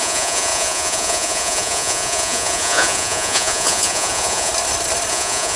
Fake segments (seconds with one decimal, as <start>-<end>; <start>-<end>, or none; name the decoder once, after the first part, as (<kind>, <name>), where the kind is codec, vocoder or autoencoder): 0.0-4.5 (vocoder, Vocos); 5.1-5.6